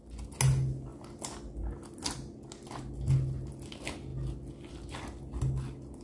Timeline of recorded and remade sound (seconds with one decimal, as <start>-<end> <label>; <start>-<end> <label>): 0.0-6.0 recorded